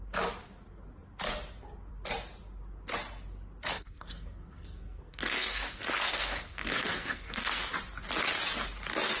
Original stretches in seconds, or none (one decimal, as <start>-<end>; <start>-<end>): 0.0-3.7; 7.7-9.2